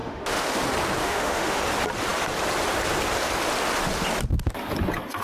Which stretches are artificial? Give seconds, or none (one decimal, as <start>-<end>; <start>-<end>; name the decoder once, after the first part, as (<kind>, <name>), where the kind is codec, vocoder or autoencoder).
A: 0.0-0.6 (autoencoder, DAC-VAE); 1.0-1.6